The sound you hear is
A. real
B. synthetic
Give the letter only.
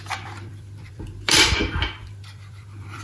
B